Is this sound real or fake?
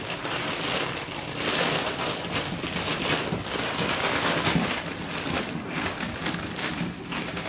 real